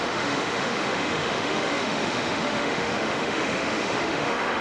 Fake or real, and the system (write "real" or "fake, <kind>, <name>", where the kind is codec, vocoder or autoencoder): fake, autoencoder, DAC-VAE